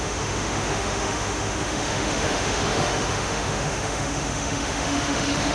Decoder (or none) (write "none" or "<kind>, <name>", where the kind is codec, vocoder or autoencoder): autoencoder, DAC-VAE